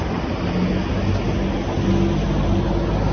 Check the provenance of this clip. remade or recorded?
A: recorded